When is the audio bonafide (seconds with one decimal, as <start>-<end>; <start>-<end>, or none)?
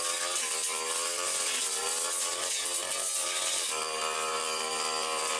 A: 0.0-5.4